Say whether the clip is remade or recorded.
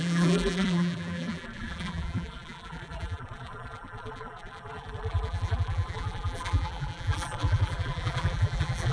remade